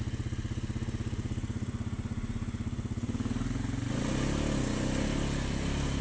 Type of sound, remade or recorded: recorded